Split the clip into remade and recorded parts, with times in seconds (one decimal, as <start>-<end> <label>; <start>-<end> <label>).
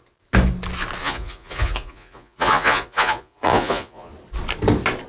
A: 0.0-1.0 recorded; 1.0-4.1 remade; 4.1-5.1 recorded